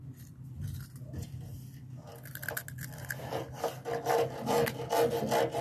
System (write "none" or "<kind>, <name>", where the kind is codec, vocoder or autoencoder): none